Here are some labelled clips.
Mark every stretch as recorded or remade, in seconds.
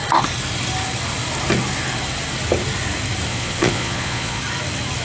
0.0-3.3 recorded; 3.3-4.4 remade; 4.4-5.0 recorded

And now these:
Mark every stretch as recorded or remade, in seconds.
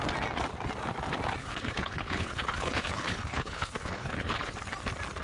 0.0-1.4 recorded; 1.4-4.5 remade; 4.5-5.2 recorded